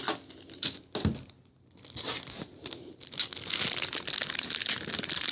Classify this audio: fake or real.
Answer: real